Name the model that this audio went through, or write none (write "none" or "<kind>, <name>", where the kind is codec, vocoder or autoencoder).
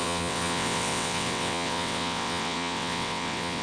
vocoder, WaveNeXt